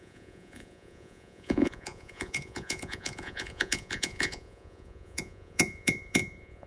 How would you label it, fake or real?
fake